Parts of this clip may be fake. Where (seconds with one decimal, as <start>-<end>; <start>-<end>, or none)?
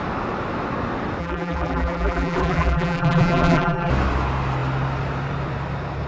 1.2-3.9